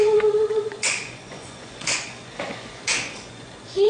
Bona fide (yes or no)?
no